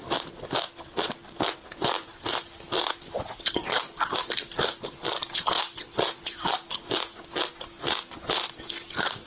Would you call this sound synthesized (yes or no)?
no